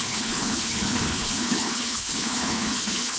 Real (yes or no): no